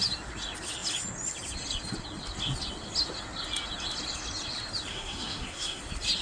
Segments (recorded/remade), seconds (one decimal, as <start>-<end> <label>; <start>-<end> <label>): 0.0-4.9 recorded; 4.9-5.8 remade; 5.8-6.2 recorded

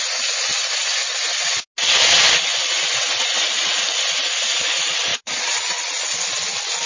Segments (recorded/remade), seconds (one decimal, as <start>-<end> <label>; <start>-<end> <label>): 0.0-5.1 recorded; 5.1-6.1 remade; 6.1-6.9 recorded

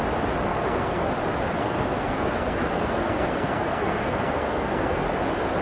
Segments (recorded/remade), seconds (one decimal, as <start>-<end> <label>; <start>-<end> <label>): 0.0-0.5 recorded; 0.5-1.1 remade; 1.1-1.6 recorded; 1.6-5.0 remade; 5.0-5.6 recorded

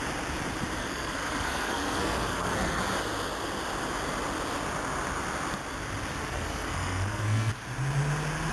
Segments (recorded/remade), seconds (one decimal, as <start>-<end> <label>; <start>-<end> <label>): 0.0-0.8 recorded; 0.8-2.8 remade; 2.8-6.2 recorded; 6.2-7.5 remade; 7.5-8.5 recorded

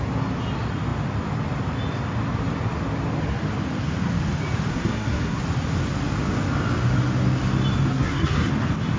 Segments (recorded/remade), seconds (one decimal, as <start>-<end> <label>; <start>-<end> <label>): 0.0-4.7 recorded; 4.7-5.4 remade; 5.4-7.9 recorded; 7.9-8.5 remade; 8.5-9.0 recorded

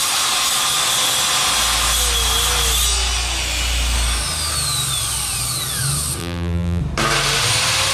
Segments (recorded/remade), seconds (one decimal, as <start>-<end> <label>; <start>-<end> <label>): 0.0-6.2 recorded; 6.2-6.8 remade; 6.8-7.9 recorded

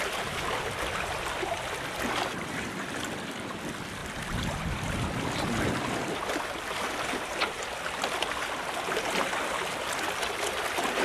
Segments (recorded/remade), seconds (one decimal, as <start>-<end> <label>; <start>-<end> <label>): 0.0-4.0 recorded; 4.0-6.0 remade; 6.0-11.0 recorded

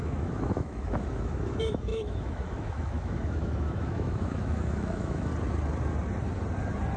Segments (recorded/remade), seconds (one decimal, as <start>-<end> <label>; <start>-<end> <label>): 0.0-5.3 remade; 5.3-7.0 recorded